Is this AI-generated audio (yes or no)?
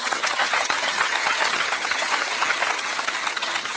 yes